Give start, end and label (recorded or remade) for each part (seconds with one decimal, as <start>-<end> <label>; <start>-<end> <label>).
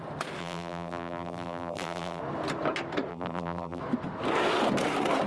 0.0-0.4 recorded; 0.4-2.2 remade; 2.2-3.1 recorded; 3.1-3.8 remade; 3.8-5.3 recorded